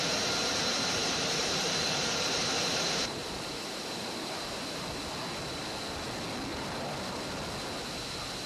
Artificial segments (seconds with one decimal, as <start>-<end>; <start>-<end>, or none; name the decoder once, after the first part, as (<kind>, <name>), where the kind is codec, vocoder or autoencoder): 1.0-4.9 (vocoder, BigVGAN v2); 6.5-7.2